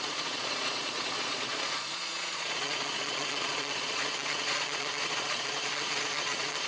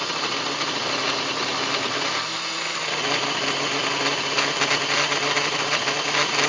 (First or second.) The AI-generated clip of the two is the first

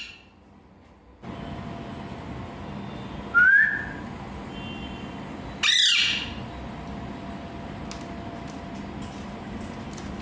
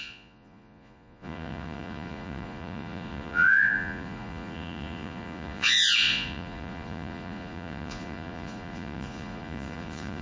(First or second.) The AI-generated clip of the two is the second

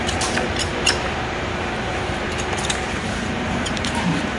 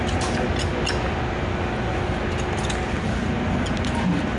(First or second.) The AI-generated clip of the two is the first